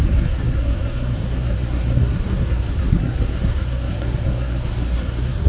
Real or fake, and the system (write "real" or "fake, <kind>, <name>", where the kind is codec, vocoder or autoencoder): fake, codec, SNAC